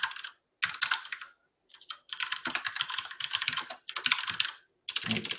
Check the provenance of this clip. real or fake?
real